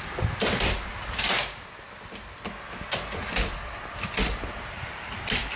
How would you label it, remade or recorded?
recorded